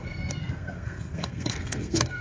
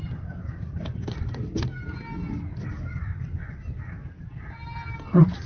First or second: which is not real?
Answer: first